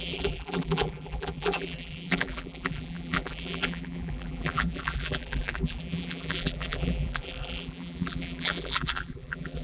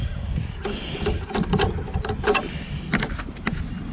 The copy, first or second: first